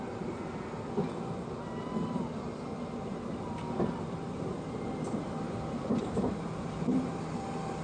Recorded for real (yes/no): yes